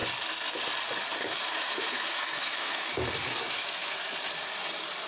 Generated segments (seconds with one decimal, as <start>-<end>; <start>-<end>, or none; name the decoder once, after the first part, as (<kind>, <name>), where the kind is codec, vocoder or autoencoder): 1.2-4.3 (autoencoder, DAC-VAE)

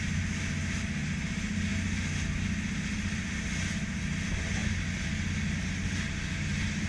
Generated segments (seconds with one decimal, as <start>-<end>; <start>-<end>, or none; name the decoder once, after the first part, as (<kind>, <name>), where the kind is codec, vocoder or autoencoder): none

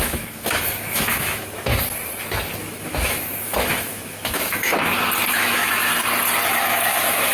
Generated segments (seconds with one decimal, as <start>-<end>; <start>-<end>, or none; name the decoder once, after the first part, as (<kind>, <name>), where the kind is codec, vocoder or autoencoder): 0.0-1.7 (autoencoder, DAC-VAE); 2.6-4.7; 5.3-5.9; 6.5-7.3

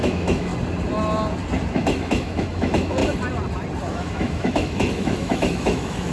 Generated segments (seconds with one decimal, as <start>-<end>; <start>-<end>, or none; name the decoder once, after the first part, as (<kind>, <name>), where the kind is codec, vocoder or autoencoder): 0.0-0.5 (autoencoder, DAC-VAE); 1.7-3.0; 3.9-6.1

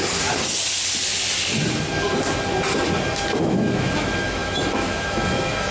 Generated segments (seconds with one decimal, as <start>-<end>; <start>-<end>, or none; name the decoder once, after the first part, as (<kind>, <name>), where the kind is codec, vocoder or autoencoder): 3.4-5.7 (autoencoder, DAC-VAE)

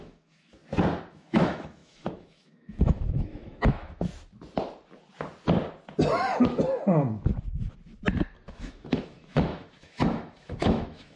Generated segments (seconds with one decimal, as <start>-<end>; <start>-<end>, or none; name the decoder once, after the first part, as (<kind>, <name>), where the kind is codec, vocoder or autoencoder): 0.0-0.6 (autoencoder, DAC-VAE); 1.1-4.1; 8.5-11.2

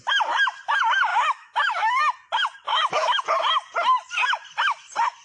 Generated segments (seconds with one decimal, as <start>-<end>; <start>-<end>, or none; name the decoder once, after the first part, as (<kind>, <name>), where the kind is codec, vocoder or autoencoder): 1.1-2.0 (autoencoder, DAC-VAE); 2.7-3.2